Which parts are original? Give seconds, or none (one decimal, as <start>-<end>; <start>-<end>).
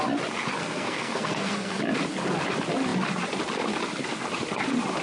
0.0-0.6; 1.8-5.0